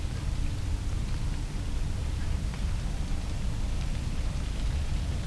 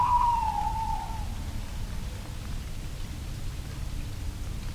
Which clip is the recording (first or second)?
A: second